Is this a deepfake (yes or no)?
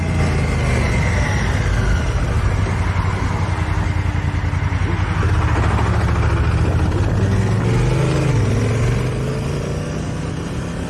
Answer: no